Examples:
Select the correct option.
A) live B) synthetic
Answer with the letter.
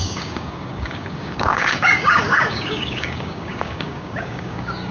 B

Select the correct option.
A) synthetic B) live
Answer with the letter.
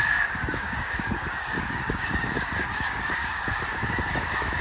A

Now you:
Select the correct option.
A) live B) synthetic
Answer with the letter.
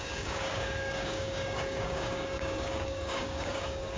B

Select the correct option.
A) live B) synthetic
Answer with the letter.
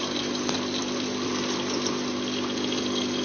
A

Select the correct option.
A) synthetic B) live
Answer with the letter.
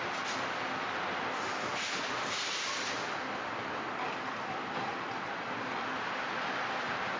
B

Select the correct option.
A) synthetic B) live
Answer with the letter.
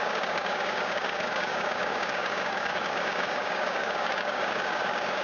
A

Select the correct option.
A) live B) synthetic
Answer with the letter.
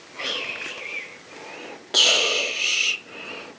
A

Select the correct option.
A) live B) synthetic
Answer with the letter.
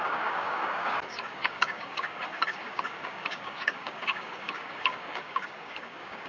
B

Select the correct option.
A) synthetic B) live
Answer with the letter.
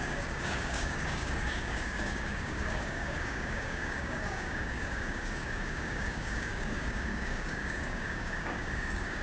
A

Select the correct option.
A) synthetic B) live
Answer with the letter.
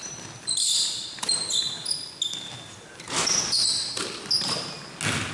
B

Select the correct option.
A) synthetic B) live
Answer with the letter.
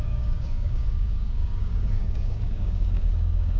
A